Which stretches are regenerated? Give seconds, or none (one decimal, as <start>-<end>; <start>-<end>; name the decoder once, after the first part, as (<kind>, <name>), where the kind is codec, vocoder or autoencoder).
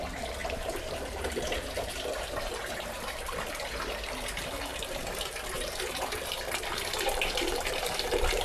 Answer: 0.0-8.4 (vocoder, BigVGAN v2)